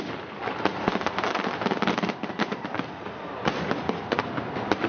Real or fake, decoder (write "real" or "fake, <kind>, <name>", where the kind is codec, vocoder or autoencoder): fake, vocoder, BigVGAN v2